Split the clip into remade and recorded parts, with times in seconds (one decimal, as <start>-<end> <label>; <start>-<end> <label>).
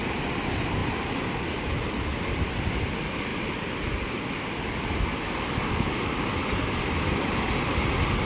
0.0-8.3 recorded